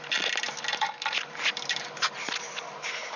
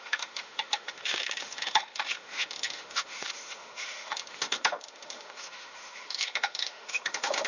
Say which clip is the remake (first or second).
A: second